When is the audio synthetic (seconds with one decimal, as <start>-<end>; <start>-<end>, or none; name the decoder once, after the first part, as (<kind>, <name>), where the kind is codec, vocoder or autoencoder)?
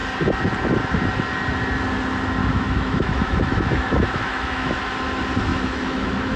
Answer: 2.4-4.8 (autoencoder, DAC-VAE); 5.5-6.4